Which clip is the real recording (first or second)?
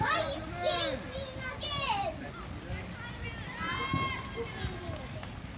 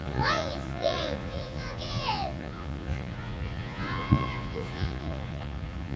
first